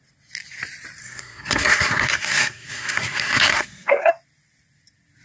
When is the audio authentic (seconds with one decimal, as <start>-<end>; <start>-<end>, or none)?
0.0-1.0; 4.1-5.2

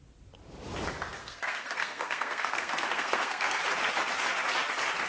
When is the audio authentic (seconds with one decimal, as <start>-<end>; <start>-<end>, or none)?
0.0-1.2; 3.6-5.1

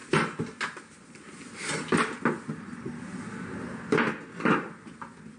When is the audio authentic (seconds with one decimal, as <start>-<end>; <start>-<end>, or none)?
0.0-5.4

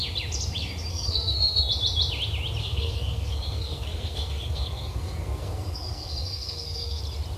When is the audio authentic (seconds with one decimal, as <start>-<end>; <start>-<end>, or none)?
0.0-0.9; 1.7-2.6; 7.0-7.4

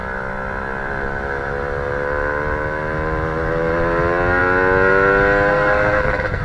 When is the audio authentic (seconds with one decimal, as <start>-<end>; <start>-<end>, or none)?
0.0-5.5